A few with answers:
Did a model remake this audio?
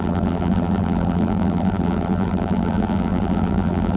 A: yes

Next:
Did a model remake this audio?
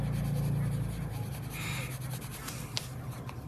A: no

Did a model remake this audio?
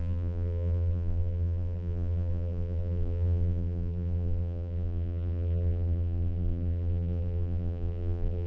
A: yes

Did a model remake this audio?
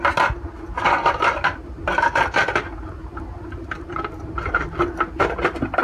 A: no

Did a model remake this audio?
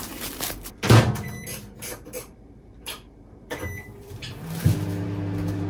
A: yes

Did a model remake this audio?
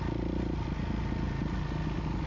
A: no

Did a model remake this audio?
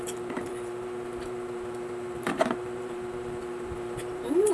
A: yes